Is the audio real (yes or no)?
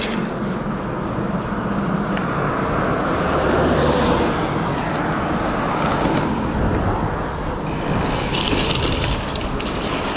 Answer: yes